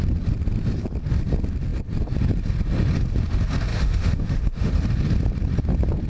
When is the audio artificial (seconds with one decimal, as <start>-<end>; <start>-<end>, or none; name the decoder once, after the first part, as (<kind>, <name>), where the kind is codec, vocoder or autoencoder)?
3.7-4.7 (autoencoder, DAC-VAE)